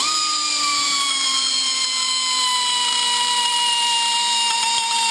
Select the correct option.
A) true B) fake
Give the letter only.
B